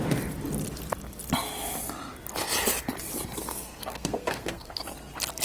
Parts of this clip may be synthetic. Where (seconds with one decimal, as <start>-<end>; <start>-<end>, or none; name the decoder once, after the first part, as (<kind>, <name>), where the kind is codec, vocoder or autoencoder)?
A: 3.4-4.8 (codec, SNAC)